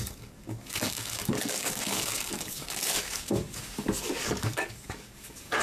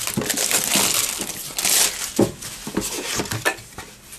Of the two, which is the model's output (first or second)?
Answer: first